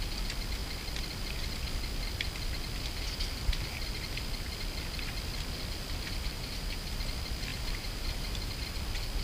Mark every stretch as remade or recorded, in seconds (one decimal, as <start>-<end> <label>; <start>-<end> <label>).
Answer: 0.0-6.3 recorded; 6.3-6.9 remade; 6.9-7.5 recorded; 7.5-8.5 remade; 8.5-9.2 recorded

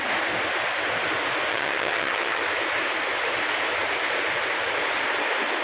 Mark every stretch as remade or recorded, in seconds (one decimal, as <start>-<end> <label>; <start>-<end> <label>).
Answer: 0.0-1.5 recorded; 1.5-2.4 remade; 2.4-5.6 recorded

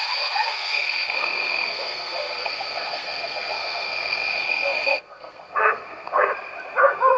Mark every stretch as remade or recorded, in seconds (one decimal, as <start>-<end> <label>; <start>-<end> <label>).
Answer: 0.0-6.3 remade; 6.3-6.8 recorded; 6.8-7.2 remade

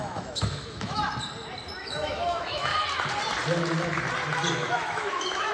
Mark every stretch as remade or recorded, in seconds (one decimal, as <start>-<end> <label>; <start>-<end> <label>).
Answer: 0.0-1.0 remade; 1.0-1.8 recorded; 1.8-2.7 remade; 2.7-4.5 recorded; 4.5-5.5 remade

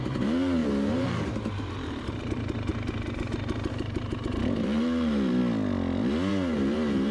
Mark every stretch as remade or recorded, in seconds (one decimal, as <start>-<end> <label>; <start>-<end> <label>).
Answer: 0.0-2.7 remade; 2.7-3.7 recorded; 3.7-5.4 remade; 5.4-6.3 recorded; 6.3-7.1 remade